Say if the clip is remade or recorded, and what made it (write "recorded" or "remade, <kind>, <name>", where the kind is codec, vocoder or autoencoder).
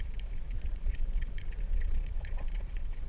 remade, vocoder, Vocos